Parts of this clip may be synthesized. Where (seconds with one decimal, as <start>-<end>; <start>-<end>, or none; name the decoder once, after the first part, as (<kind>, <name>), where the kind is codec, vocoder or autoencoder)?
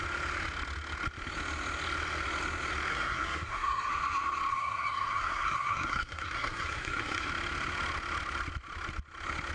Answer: 2.9-3.9 (codec, SNAC); 4.5-7.3